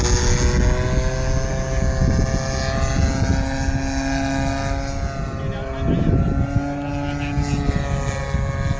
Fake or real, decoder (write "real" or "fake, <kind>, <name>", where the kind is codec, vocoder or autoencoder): real